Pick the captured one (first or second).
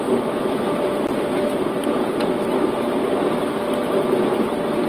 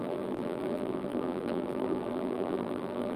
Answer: first